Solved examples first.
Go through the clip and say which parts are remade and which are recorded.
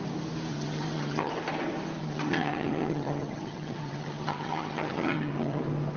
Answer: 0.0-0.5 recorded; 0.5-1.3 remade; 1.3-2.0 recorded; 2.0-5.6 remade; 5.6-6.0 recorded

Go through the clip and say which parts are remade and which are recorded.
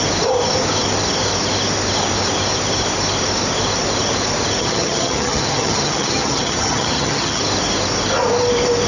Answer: 0.0-4.6 recorded; 4.6-7.4 remade; 7.4-8.9 recorded